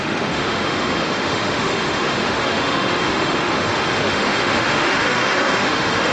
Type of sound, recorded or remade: remade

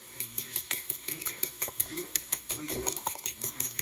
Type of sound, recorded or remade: remade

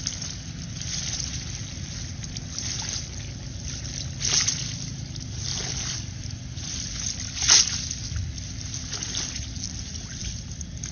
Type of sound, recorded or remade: recorded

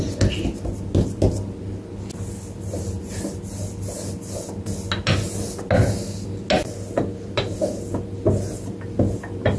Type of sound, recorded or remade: recorded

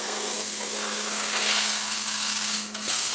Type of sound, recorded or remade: remade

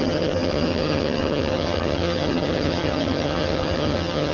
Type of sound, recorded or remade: remade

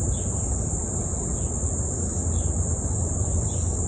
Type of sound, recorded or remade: recorded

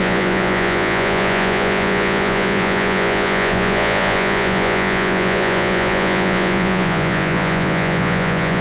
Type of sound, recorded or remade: remade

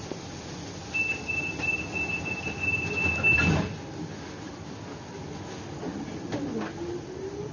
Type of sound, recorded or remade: recorded